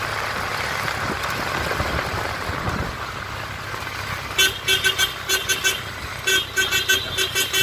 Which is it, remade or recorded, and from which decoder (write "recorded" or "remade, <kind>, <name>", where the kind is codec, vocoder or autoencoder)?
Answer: recorded